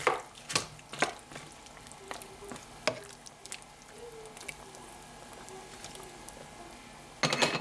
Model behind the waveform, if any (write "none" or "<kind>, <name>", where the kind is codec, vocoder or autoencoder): none